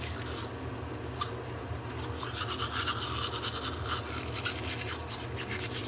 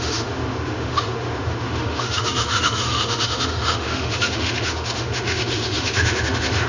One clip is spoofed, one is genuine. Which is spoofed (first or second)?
second